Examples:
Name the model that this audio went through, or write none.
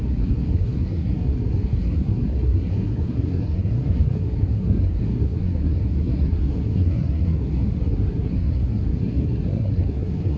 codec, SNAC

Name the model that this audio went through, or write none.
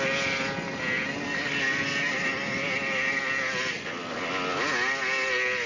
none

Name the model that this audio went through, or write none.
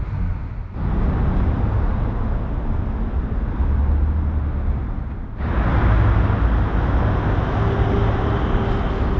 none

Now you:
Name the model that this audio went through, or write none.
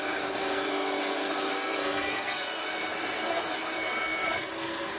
codec, SNAC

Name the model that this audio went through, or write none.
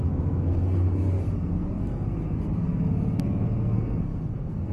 codec, SNAC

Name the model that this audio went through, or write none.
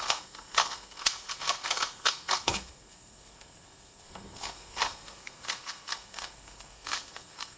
codec, SNAC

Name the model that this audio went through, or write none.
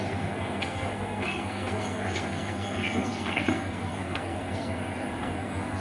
codec, SNAC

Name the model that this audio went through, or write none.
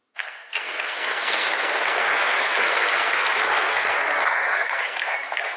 codec, SNAC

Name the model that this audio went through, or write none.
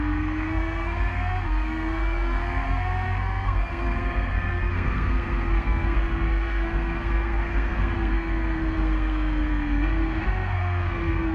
codec, SNAC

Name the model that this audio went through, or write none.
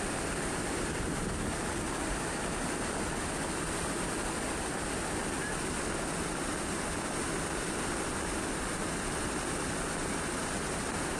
none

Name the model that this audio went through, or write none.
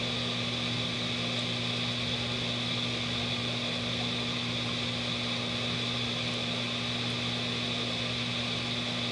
none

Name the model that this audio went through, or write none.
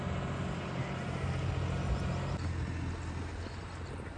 none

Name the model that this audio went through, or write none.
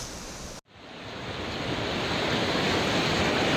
none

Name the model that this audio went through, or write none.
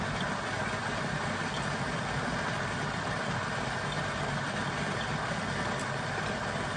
none